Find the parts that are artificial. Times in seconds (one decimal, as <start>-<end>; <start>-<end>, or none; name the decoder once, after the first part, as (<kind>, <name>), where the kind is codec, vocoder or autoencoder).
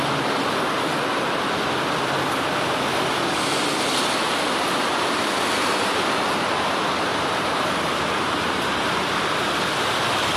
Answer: 7.1-9.4 (vocoder, BigVGAN v2)